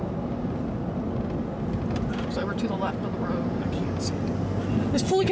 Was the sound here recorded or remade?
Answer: recorded